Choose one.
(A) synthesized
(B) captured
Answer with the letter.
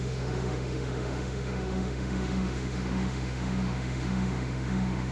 A